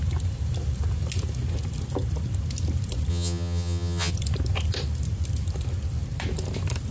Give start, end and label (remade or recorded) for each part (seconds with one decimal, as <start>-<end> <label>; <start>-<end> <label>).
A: 0.0-3.1 recorded; 3.1-4.1 remade; 4.1-6.9 recorded